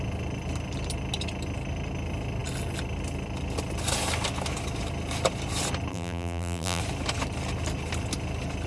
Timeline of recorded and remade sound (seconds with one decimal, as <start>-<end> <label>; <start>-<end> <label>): 0.0-5.9 recorded; 5.9-6.8 remade; 6.8-8.7 recorded